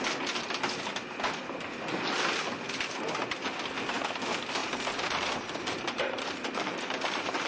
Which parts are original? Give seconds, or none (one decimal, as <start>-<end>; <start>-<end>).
0.0-4.6